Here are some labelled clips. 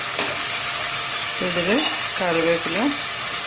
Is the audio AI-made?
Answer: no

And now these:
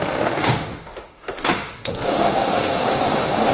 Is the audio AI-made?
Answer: yes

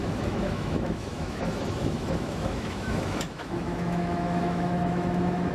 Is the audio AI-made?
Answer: yes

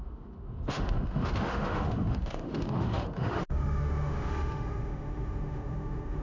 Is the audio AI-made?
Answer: yes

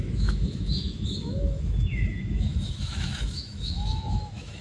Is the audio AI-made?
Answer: yes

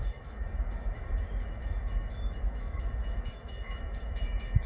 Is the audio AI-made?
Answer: yes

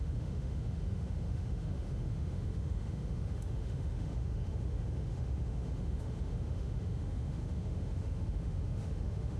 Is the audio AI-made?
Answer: yes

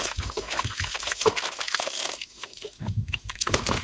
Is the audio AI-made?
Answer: yes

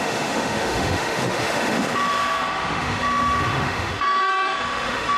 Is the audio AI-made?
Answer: yes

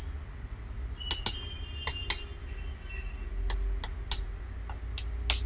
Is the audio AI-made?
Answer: no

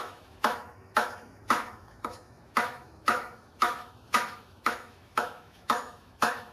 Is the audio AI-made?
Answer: yes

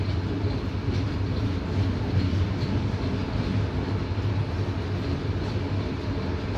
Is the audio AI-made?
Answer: no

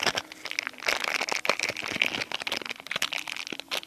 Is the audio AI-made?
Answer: no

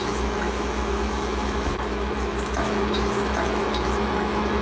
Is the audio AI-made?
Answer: yes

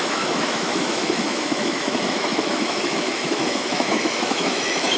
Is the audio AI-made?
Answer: yes